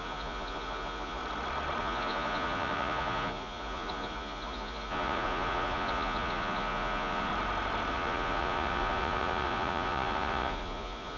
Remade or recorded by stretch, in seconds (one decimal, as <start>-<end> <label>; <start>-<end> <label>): 0.0-1.2 remade; 1.2-1.8 recorded; 1.8-7.3 remade; 7.3-7.9 recorded; 7.9-11.2 remade